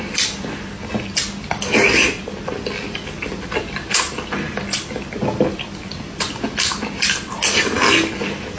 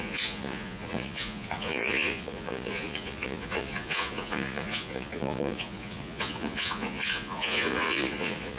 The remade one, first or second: second